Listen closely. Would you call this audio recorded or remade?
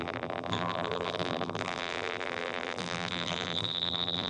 remade